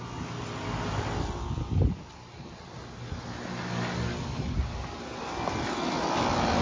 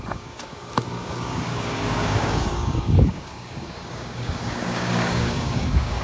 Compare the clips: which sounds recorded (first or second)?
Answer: first